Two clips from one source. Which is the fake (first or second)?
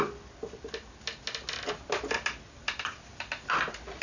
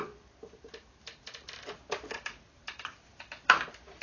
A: second